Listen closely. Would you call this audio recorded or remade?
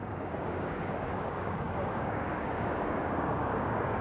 remade